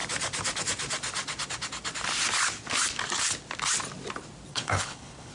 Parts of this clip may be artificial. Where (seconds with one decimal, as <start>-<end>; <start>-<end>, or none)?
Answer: 4.5-5.3